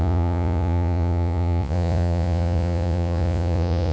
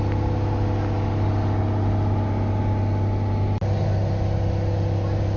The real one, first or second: second